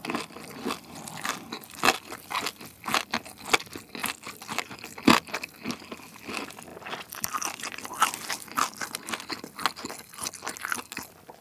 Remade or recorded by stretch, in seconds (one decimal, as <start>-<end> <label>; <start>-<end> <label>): 0.0-11.4 recorded

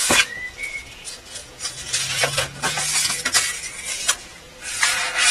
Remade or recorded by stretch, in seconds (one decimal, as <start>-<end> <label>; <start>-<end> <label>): 0.0-5.3 remade

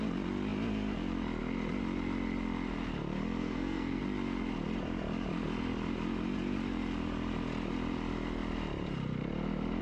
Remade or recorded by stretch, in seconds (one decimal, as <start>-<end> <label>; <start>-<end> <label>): 0.0-3.4 recorded; 3.4-4.0 remade; 4.0-9.8 recorded

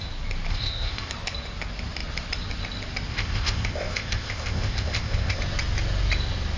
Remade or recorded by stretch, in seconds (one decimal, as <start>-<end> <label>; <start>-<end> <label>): 0.0-0.5 recorded; 0.5-1.1 remade; 1.1-3.1 recorded; 3.1-5.4 remade; 5.4-6.6 recorded

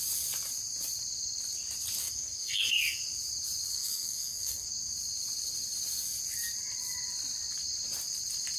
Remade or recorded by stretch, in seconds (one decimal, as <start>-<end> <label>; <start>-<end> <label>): 0.0-2.0 recorded; 2.0-3.0 remade; 3.0-3.7 recorded; 3.7-4.7 remade; 4.7-8.6 recorded

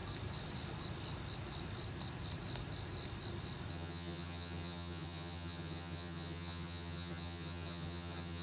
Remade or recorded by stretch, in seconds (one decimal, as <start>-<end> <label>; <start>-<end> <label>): 0.0-3.7 recorded; 3.7-8.4 remade

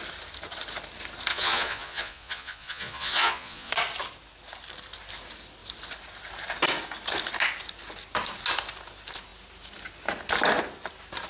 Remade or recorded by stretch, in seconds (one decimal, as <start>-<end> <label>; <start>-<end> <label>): 0.0-1.3 recorded; 1.3-3.7 remade; 3.7-11.3 recorded

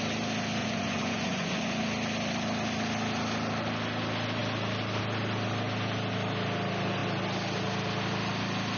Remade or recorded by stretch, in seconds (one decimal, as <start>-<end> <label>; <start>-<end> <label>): 0.0-0.6 recorded; 0.6-1.8 remade; 1.8-8.8 recorded